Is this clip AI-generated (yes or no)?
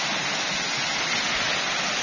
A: no